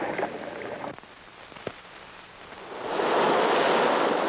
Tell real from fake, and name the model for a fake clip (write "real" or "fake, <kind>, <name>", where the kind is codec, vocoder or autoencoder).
real